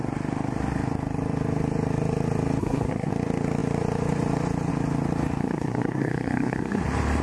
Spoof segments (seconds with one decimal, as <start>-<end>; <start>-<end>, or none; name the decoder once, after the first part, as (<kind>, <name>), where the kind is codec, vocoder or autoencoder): 2.6-3.1 (codec, SNAC); 5.4-6.8